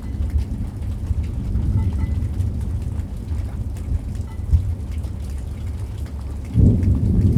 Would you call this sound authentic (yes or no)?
yes